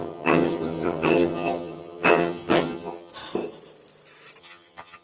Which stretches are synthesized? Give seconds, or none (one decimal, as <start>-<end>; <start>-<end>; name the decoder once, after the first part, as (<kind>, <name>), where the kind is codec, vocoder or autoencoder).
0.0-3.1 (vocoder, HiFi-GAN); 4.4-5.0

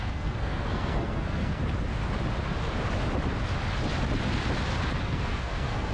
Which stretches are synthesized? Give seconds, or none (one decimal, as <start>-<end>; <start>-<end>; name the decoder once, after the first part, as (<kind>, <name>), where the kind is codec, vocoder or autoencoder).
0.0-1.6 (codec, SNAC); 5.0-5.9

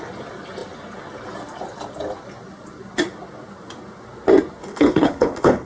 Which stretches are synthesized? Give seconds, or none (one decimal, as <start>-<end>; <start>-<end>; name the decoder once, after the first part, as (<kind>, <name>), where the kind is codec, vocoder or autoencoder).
4.6-5.7 (codec, HILCodec)

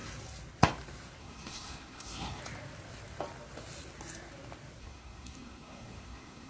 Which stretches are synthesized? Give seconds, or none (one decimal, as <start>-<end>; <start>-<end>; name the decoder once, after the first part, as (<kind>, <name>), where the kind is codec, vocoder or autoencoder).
1.2-2.4 (codec, SNAC); 4.8-6.5

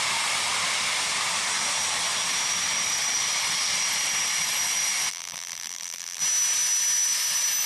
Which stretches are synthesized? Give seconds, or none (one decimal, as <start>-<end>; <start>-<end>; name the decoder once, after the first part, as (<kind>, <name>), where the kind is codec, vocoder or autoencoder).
5.1-6.2 (vocoder, BigVGAN v2)

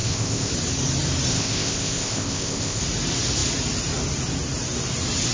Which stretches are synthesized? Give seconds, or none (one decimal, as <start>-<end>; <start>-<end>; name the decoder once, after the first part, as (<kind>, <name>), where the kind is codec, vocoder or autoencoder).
0.0-0.5 (codec, ZipCodec); 1.3-2.8